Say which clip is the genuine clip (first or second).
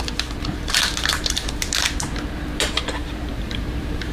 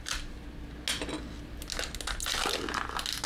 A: second